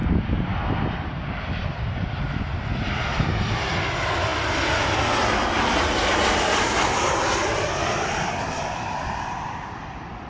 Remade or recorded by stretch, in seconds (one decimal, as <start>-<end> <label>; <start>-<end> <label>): 0.0-0.9 recorded; 0.9-4.3 remade; 4.3-8.3 recorded; 8.3-10.3 remade